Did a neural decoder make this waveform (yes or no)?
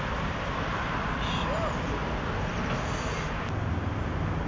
no